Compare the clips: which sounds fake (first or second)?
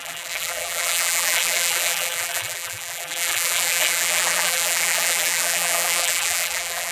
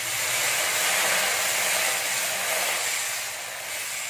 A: first